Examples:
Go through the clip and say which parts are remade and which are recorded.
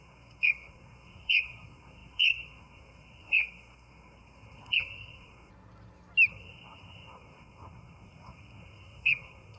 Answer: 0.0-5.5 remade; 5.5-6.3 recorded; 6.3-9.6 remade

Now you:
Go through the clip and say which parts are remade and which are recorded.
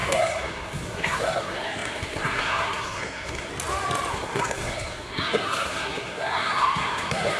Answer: 0.0-3.5 remade; 3.5-4.1 recorded; 4.1-7.4 remade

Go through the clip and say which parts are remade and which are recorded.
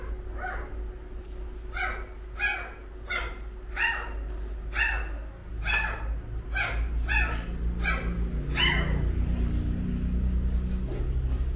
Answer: 0.0-11.6 recorded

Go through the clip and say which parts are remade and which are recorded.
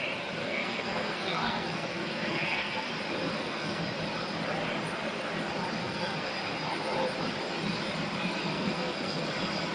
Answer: 0.0-0.4 recorded; 0.4-2.9 remade; 2.9-3.3 recorded; 3.3-3.8 remade; 3.8-5.8 recorded; 5.8-6.3 remade; 6.3-8.5 recorded; 8.5-9.2 remade; 9.2-9.7 recorded